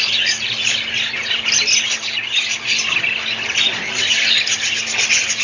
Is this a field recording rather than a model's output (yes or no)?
yes